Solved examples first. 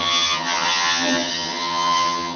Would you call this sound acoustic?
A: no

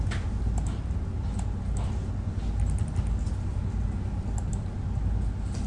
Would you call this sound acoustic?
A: yes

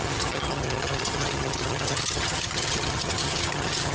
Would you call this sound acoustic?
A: no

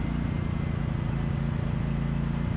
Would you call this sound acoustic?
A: yes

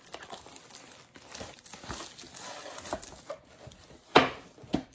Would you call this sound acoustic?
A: yes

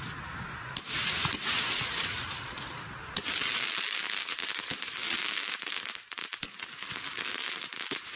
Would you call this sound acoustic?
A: yes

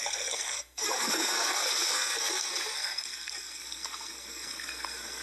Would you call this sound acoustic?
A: no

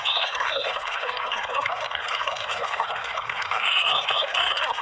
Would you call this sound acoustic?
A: no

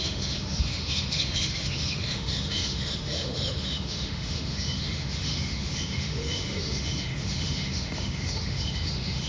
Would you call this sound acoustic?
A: no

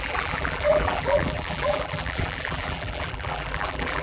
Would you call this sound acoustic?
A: no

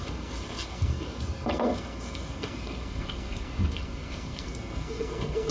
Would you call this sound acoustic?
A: no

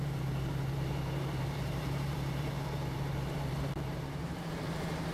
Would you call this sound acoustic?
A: no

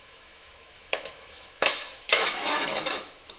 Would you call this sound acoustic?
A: no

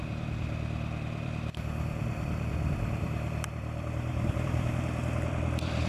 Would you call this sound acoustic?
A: no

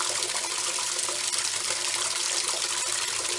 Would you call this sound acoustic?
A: yes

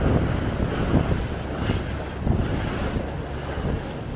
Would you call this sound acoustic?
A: yes